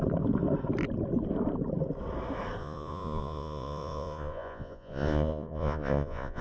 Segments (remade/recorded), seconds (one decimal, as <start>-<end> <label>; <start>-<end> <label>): 0.0-2.6 recorded; 2.6-6.4 remade